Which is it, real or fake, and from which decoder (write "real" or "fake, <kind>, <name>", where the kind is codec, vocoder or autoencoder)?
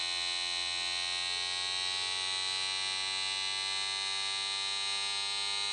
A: real